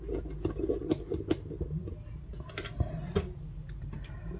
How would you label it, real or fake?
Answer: real